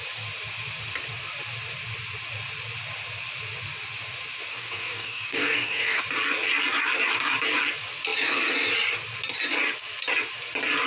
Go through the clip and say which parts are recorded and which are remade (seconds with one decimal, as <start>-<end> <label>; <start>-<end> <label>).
0.0-4.5 recorded; 4.5-6.0 remade; 6.0-10.9 recorded